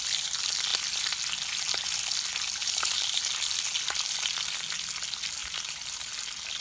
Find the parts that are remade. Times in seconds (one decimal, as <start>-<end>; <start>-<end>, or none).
2.6-3.2; 5.4-6.1